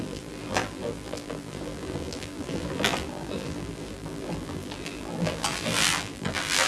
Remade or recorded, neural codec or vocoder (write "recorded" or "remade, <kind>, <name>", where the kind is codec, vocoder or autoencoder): remade, vocoder, BigVGAN v2